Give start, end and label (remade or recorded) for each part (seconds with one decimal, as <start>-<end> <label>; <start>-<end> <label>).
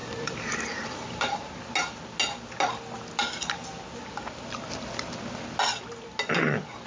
0.0-1.6 remade; 1.6-6.9 recorded